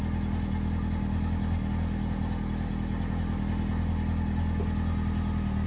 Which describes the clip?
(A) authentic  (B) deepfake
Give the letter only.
A